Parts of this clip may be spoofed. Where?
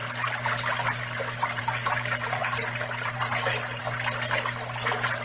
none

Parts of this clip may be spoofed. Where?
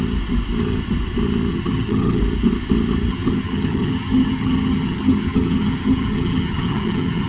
1.5-2.2 (vocoder, HiFi-GAN); 3.1-7.3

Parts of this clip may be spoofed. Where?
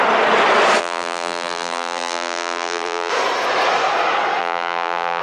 0.8-3.1 (vocoder, BigVGAN v2); 4.4-5.2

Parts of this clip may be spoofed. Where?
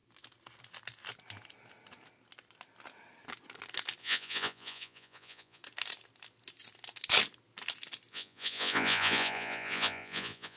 4.0-5.6 (vocoder, Vocos); 8.1-10.6